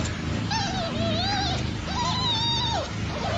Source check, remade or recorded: recorded